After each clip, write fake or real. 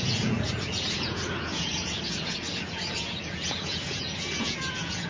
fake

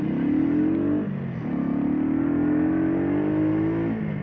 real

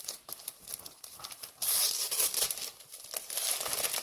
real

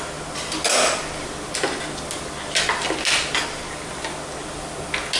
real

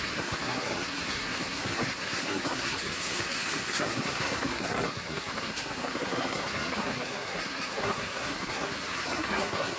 fake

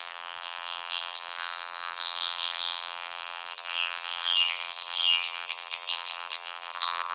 fake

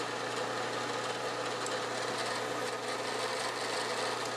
real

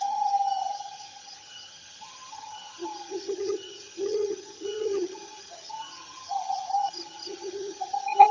fake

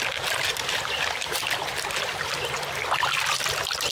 real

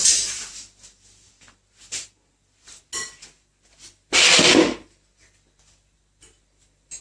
real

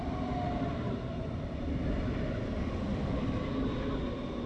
real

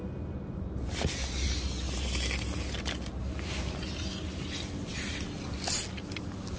real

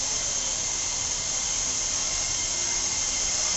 real